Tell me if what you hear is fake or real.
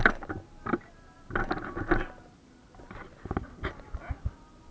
real